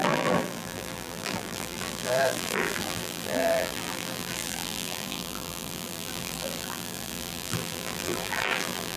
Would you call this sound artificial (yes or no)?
yes